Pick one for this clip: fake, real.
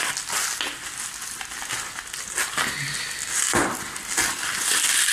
real